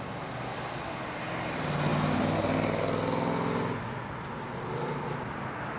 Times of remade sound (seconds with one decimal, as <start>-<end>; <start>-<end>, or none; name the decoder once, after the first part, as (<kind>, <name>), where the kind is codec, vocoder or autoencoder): none